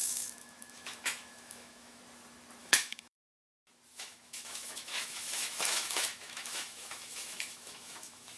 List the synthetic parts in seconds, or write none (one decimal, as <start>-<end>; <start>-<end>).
0.0-2.0; 2.6-3.3; 3.9-8.4